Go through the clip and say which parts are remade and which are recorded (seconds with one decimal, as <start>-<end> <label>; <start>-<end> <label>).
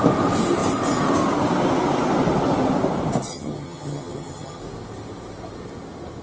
0.0-3.3 recorded; 3.3-4.6 remade; 4.6-6.2 recorded